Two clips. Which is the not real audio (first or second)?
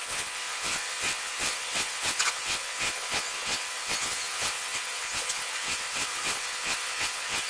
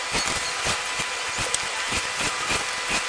first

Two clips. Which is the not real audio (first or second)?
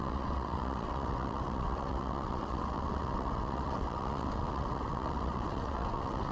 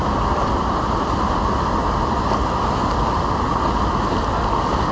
first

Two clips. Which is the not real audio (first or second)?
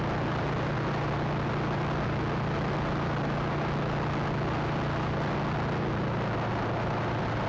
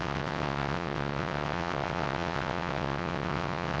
second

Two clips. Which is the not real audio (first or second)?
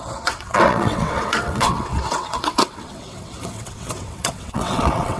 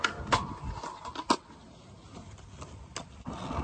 first